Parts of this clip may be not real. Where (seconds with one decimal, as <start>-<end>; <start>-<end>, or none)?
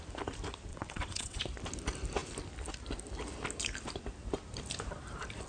0.7-1.4